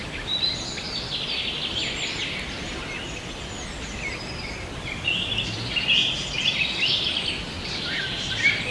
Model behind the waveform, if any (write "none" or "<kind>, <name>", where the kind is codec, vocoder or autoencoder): none